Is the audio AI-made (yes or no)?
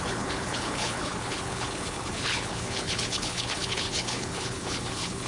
yes